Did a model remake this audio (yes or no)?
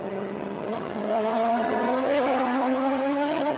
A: yes